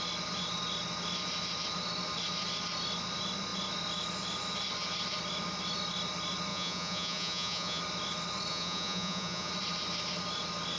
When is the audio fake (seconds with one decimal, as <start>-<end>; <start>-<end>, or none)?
6.5-7.8; 8.5-9.5